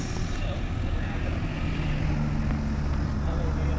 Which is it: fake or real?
real